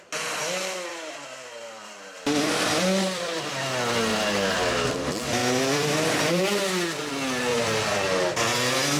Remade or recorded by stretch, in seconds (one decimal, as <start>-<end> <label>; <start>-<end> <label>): 0.0-0.9 recorded; 0.9-3.5 remade; 3.5-4.1 recorded; 4.1-4.9 remade; 4.9-5.4 recorded; 5.4-7.1 remade; 7.1-7.5 recorded; 7.5-8.3 remade; 8.3-9.0 recorded